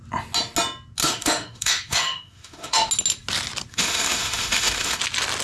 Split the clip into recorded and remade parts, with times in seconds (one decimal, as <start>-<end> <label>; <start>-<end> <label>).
0.0-1.0 recorded; 1.0-2.9 remade; 2.9-3.7 recorded; 3.7-5.0 remade; 5.0-5.4 recorded